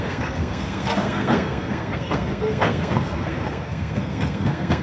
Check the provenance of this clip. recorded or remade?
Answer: remade